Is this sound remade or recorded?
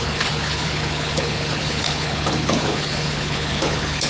remade